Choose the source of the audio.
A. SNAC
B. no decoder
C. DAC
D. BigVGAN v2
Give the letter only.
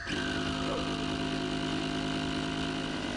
B